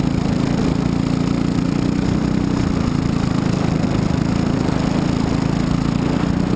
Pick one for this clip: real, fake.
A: real